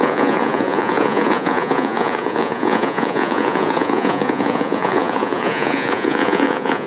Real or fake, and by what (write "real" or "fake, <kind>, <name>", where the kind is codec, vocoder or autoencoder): fake, vocoder, Vocos